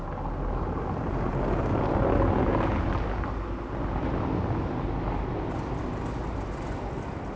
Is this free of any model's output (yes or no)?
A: yes